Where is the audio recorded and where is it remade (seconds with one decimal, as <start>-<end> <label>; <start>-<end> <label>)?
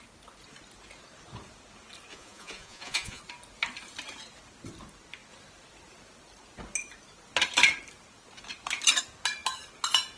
0.0-2.1 recorded; 2.1-3.2 remade; 3.2-10.2 recorded